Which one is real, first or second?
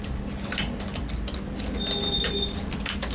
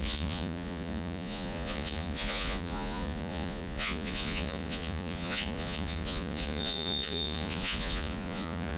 first